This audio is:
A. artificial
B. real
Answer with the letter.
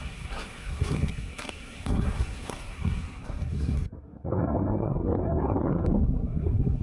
A